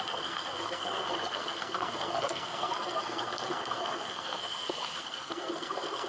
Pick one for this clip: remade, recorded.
remade